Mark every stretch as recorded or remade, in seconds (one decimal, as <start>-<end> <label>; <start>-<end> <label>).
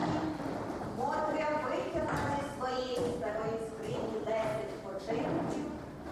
0.0-6.1 recorded